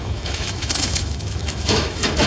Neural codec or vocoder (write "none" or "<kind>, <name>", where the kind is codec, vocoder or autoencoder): autoencoder, DAC-VAE